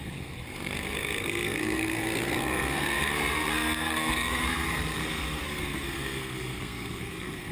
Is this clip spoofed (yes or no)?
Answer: yes